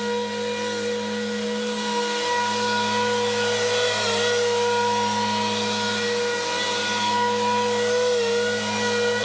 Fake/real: real